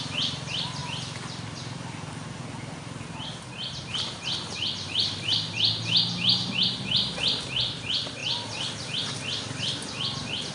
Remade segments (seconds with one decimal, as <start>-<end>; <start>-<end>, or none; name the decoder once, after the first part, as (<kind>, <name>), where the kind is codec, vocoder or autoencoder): none